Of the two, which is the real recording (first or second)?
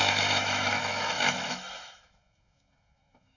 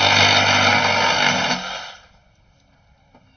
second